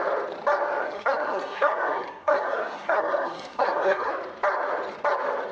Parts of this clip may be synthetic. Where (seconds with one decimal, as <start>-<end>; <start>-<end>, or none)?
0.8-4.1